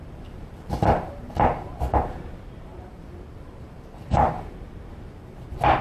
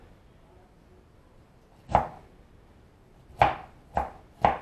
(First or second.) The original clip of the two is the second